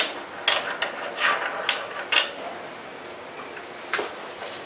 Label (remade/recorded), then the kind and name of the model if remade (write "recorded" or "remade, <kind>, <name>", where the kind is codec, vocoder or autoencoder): recorded